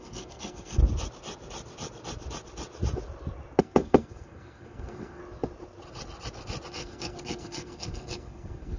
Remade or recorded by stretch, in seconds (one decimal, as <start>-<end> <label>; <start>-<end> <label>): 0.0-0.8 remade; 0.8-3.6 recorded; 3.6-5.2 remade; 5.2-6.7 recorded; 6.7-8.8 remade